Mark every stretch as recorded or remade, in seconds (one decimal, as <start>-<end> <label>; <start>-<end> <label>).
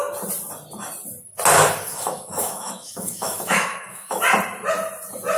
0.0-1.9 recorded; 1.9-4.2 remade; 4.2-5.4 recorded